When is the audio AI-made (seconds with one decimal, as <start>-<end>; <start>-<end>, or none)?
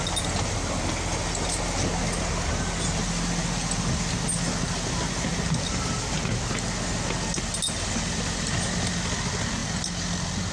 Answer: none